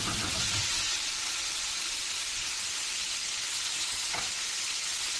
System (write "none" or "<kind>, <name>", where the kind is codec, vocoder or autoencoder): vocoder, WaveNeXt